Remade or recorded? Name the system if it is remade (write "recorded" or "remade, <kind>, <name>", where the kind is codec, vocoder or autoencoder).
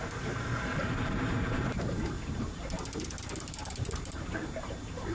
remade, vocoder, BigVGAN v2